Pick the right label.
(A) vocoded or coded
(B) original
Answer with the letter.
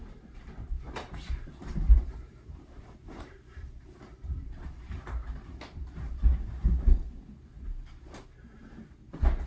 A